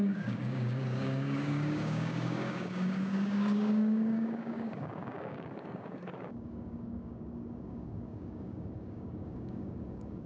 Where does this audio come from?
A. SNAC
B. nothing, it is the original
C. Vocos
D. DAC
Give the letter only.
D